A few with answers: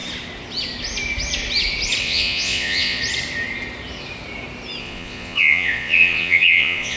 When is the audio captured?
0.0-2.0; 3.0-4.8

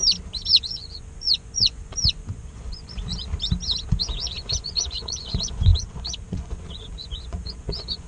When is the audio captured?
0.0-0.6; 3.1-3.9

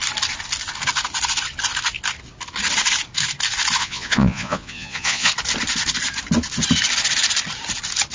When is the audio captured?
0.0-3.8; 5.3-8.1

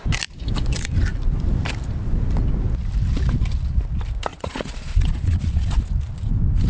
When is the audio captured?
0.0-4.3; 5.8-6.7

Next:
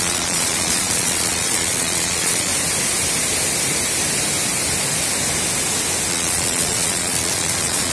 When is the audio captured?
2.5-6.1

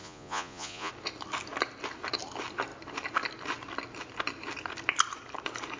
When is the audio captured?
0.9-5.8

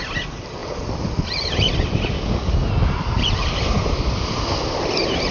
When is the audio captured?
0.0-5.3

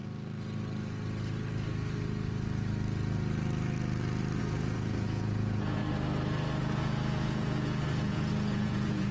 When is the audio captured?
0.0-4.4; 5.8-6.6